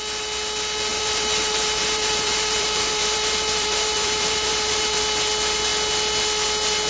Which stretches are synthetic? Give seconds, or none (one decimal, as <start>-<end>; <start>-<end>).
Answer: 0.9-5.0